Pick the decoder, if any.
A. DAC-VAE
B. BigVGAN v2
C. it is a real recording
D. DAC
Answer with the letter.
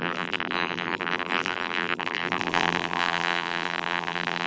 B